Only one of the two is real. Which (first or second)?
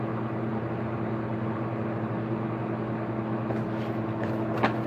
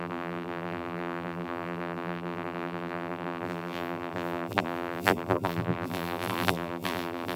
first